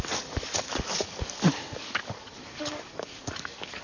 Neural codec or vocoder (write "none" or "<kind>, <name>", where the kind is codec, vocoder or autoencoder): codec, DAC